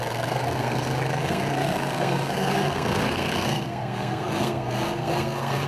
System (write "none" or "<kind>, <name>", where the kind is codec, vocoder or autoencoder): codec, SNAC